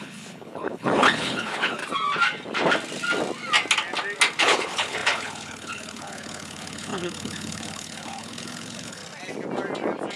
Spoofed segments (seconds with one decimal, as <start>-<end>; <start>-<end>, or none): 0.0-1.8; 4.4-9.0